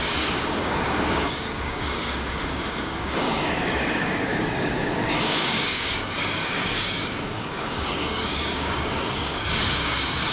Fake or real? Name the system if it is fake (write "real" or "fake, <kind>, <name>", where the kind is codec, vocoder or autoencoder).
fake, codec, DAC